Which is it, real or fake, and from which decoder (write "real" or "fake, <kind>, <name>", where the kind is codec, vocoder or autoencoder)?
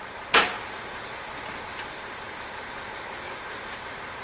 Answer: real